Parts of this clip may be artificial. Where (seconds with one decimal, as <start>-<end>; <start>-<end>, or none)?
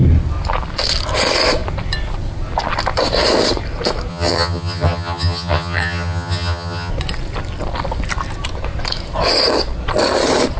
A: 4.1-6.9